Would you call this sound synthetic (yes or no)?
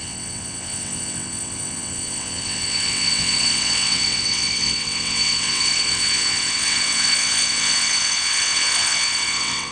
yes